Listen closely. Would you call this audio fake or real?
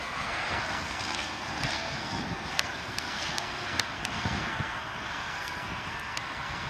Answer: fake